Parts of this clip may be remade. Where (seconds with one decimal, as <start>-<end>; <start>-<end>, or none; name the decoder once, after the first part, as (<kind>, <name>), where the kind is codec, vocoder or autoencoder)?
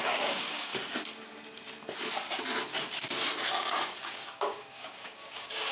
0.0-0.7 (codec, DAC); 3.5-5.7